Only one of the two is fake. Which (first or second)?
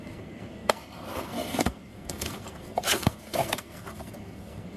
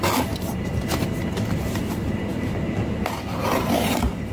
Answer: first